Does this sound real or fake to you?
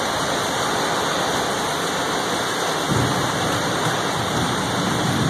real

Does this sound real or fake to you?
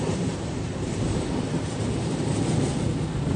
fake